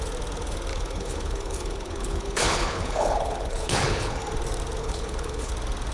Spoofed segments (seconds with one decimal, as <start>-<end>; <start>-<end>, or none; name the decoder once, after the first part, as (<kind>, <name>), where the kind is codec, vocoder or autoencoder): 0.7-4.2 (codec, HILCodec); 4.8-5.5